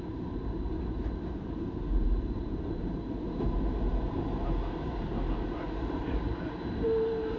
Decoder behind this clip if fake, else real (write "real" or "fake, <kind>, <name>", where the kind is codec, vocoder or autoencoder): fake, vocoder, BigVGAN v2